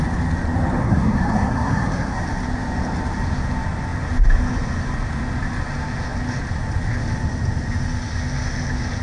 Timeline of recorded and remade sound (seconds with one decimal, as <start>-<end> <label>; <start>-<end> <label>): 0.0-0.8 recorded; 0.8-2.2 remade; 2.2-9.0 recorded